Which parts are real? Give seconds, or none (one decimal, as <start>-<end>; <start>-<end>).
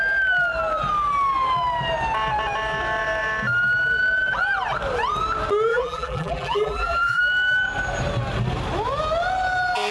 0.0-5.7; 7.2-9.9